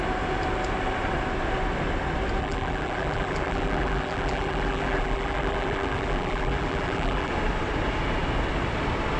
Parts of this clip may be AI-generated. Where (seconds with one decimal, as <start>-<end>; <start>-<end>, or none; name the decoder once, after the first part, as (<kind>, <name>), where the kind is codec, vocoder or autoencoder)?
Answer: 2.4-7.3 (vocoder, BigVGAN v2)